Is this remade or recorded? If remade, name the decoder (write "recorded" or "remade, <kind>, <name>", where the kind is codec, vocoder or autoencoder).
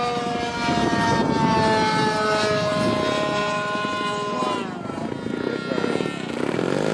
recorded